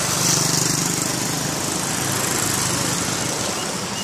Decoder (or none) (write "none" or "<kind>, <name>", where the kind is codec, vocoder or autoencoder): none